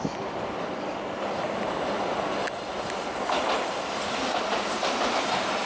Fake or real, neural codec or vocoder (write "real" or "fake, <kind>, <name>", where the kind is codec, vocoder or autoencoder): real